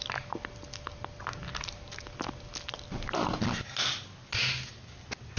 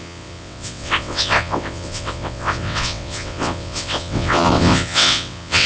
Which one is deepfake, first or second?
second